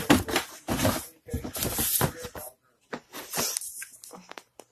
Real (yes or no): yes